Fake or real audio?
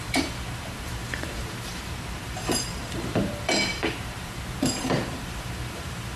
fake